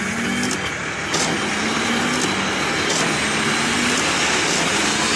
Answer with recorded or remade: recorded